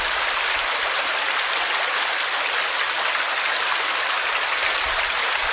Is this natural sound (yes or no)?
yes